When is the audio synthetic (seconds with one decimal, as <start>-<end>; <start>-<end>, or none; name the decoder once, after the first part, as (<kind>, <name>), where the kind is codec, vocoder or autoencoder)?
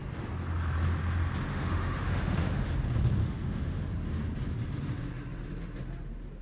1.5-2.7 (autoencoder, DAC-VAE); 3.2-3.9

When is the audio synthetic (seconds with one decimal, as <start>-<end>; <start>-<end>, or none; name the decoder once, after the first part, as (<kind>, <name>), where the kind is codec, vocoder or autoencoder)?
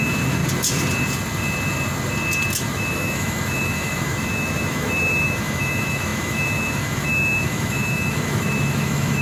0.0-0.4 (autoencoder, DAC-VAE); 2.7-9.2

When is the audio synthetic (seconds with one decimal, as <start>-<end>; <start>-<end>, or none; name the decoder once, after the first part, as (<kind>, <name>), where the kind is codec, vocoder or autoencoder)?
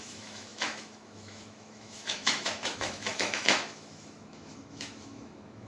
0.0-5.7 (autoencoder, DAC-VAE)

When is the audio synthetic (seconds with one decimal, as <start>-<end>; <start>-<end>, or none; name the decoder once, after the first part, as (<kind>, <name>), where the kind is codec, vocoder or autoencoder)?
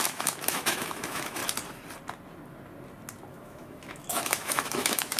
0.0-1.4 (autoencoder, DAC-VAE); 3.3-5.2